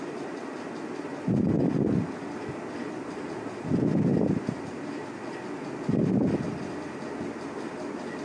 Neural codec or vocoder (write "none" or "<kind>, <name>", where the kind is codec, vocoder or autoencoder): none